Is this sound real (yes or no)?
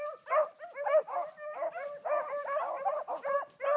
yes